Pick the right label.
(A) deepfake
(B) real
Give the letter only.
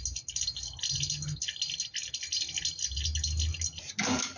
B